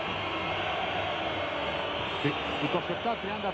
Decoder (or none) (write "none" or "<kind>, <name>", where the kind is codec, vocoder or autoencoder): none